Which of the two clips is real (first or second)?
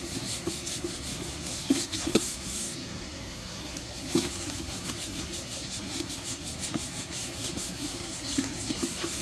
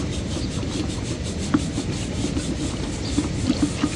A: second